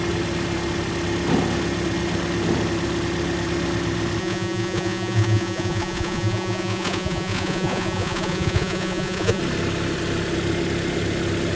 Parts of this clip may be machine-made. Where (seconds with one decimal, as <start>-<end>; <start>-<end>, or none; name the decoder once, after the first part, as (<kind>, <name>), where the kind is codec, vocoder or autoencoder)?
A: 4.2-9.4 (vocoder, Vocos)

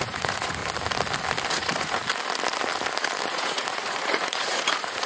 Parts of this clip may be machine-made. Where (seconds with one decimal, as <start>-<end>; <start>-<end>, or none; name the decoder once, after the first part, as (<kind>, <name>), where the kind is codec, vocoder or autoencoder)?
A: 0.0-0.6 (vocoder, Vocos); 1.5-2.0; 3.3-5.1